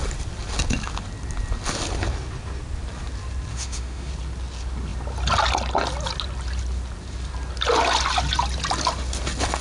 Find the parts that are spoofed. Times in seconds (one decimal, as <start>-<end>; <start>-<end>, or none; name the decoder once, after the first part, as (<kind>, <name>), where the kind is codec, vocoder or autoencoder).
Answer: 3.5-4.1 (autoencoder, DAC-VAE)

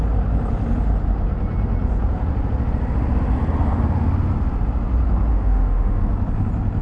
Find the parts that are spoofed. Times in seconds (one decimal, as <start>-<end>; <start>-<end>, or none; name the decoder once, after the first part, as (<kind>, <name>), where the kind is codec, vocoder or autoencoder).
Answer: 5.3-6.0 (autoencoder, DAC-VAE)

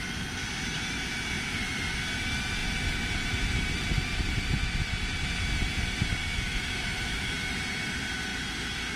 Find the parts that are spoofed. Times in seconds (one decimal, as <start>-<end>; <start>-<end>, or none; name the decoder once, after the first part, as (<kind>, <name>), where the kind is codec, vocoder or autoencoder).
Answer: 6.2-7.3 (autoencoder, DAC-VAE)

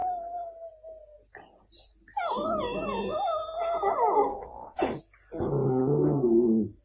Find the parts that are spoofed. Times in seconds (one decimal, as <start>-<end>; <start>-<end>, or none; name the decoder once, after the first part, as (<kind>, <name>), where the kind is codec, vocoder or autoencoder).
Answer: 4.3-5.0 (autoencoder, DAC-VAE); 5.8-6.8

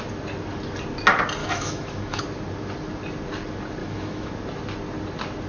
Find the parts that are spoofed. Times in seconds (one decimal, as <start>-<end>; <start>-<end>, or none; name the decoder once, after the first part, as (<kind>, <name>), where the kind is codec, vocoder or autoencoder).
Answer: 1.4-2.2 (autoencoder, DAC-VAE); 3.8-4.3

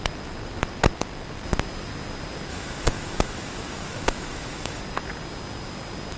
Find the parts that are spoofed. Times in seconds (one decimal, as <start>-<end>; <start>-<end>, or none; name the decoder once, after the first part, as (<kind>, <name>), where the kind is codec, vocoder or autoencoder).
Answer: 2.5-4.8 (autoencoder, DAC-VAE)